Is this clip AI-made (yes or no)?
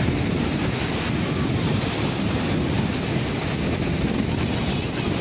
no